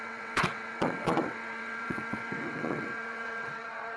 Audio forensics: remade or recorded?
remade